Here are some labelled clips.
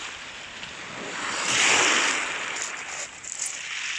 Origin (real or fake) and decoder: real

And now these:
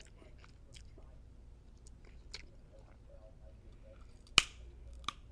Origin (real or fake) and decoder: real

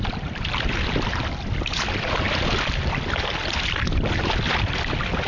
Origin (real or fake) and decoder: real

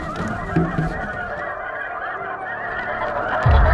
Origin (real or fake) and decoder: real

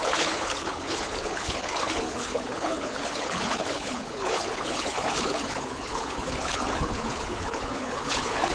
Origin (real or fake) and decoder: fake, codec, HILCodec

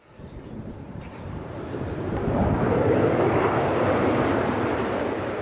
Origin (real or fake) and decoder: fake, vocoder, BigVGAN v2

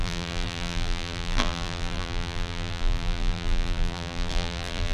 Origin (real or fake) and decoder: fake, vocoder, BigVGAN v2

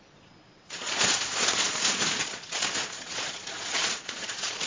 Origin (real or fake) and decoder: fake, vocoder, Vocos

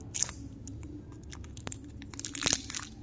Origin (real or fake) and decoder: real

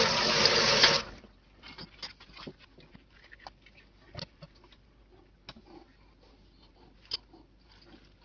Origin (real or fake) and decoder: real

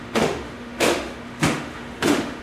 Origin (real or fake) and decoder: fake, autoencoder, DAC-VAE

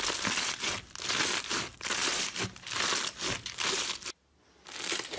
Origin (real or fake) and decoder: real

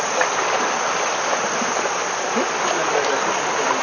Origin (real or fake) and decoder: real